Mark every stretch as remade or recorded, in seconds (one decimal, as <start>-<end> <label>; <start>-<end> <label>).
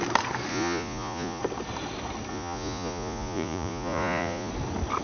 0.0-0.5 recorded; 0.5-1.4 remade; 1.4-2.3 recorded; 2.3-4.5 remade; 4.5-5.0 recorded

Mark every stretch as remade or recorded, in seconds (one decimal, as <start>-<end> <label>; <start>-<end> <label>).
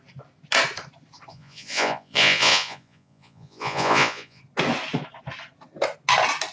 0.0-1.3 recorded; 1.3-4.4 remade; 4.4-6.5 recorded